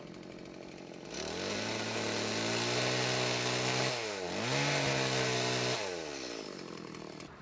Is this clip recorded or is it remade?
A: recorded